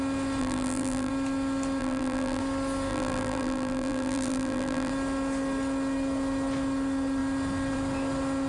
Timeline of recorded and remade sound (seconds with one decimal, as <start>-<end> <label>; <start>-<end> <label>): 0.0-0.4 recorded; 0.4-1.1 remade; 1.1-1.8 recorded; 1.8-2.4 remade; 2.4-2.9 recorded; 2.9-4.9 remade; 4.9-8.5 recorded